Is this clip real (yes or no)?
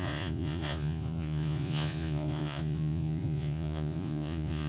no